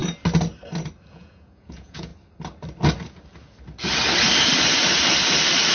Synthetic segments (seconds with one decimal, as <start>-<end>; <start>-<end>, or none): 1.1-2.1